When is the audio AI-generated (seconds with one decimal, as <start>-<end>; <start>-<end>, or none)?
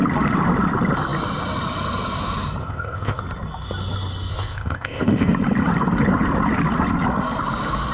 2.6-3.2; 4.3-5.3